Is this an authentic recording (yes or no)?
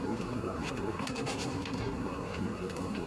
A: no